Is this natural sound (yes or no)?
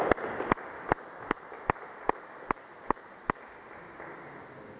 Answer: yes